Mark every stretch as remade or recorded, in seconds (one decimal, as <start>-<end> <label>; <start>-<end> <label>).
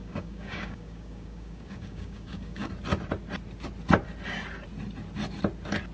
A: 0.0-2.7 remade; 2.7-5.9 recorded